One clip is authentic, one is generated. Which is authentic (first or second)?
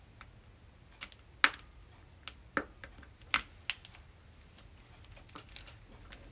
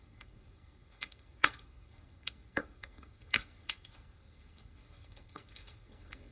first